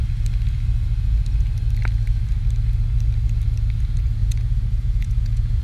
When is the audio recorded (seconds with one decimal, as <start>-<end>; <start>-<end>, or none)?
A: 0.0-4.2